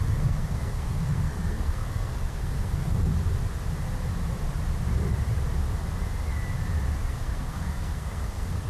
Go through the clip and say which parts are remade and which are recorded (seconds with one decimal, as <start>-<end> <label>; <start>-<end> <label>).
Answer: 0.0-3.1 remade; 3.1-7.0 recorded; 7.0-8.7 remade